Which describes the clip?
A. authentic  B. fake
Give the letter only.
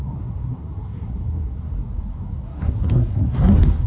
B